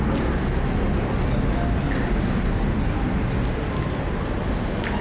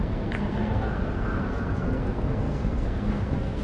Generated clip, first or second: second